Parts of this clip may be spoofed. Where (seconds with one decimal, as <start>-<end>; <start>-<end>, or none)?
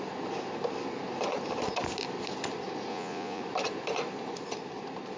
2.9-3.4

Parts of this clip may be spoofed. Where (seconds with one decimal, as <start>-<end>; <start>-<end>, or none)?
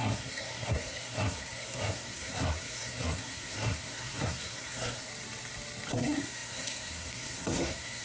0.0-5.1; 5.9-8.0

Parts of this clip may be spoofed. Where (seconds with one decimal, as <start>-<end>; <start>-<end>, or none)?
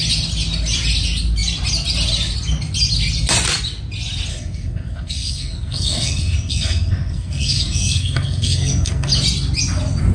4.3-9.1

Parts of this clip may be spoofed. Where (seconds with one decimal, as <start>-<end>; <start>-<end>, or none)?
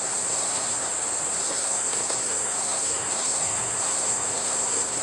0.0-0.9; 1.5-5.0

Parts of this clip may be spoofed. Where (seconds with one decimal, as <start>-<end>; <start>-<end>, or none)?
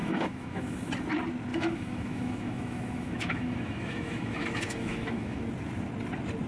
0.0-0.9; 1.5-5.4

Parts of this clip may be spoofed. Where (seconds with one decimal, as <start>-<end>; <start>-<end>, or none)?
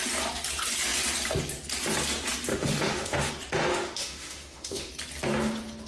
2.5-3.3; 3.7-4.9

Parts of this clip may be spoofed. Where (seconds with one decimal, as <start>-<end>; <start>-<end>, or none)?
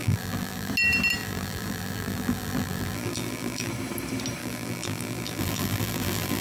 0.0-0.7; 1.2-3.7; 4.4-6.4